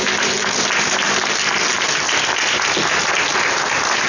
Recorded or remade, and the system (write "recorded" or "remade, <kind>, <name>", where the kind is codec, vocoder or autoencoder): recorded